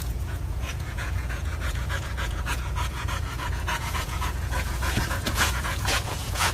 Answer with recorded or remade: remade